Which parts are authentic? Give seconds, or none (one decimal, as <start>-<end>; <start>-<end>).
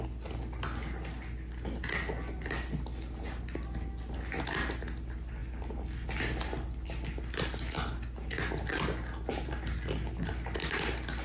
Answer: 0.0-11.2